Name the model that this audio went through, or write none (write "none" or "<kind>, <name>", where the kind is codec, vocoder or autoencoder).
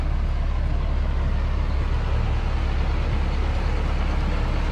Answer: none